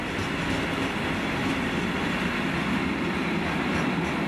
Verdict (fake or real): real